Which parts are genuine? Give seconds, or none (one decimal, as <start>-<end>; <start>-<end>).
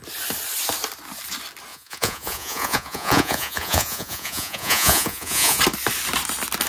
0.0-1.7; 5.6-6.7